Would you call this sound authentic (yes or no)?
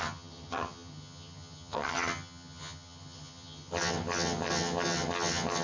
no